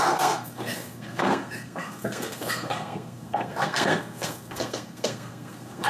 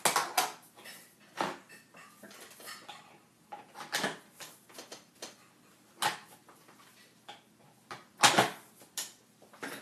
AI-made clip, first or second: first